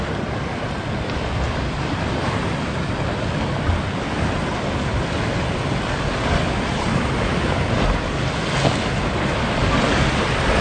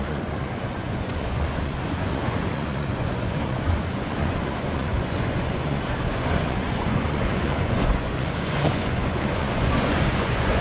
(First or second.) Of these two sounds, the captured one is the first